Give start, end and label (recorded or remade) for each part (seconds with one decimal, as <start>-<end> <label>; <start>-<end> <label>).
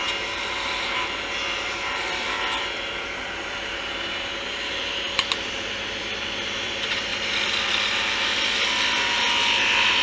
0.0-7.1 remade; 7.1-9.2 recorded; 9.2-10.0 remade